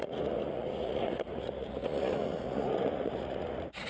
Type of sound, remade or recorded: remade